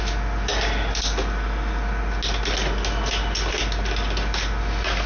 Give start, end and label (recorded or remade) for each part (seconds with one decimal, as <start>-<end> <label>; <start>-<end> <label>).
0.0-5.1 recorded